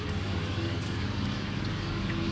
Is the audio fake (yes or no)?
yes